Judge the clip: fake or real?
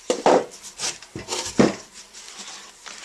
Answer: fake